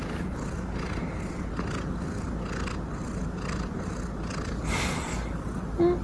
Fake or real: real